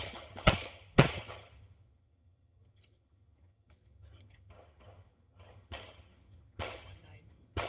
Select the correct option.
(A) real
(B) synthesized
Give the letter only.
B